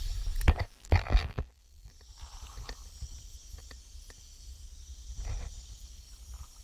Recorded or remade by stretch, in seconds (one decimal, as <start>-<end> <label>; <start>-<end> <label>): 0.0-0.7 recorded; 0.7-1.9 remade; 1.9-6.6 recorded